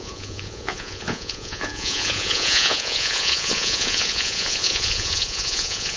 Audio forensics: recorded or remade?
remade